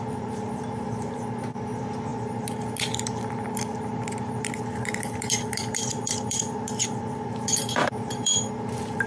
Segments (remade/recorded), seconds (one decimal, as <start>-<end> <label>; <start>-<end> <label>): 0.0-9.1 remade